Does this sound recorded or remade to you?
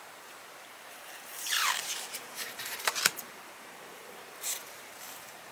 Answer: remade